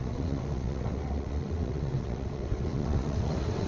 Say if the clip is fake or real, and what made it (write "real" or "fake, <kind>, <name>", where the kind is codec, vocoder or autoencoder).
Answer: fake, vocoder, WaveNeXt